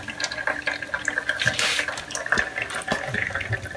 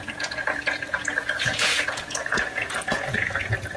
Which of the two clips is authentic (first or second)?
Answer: first